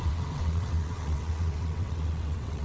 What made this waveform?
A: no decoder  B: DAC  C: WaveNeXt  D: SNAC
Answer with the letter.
C